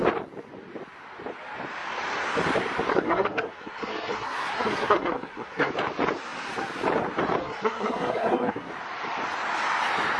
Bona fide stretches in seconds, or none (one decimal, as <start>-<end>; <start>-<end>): 0.0-2.9; 5.7-7.4; 8.7-10.2